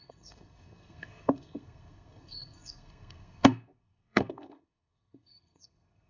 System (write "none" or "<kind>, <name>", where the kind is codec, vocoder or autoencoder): codec, SNAC